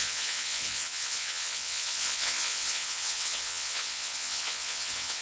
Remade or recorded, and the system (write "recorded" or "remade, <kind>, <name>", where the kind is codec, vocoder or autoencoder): remade, vocoder, WaveNeXt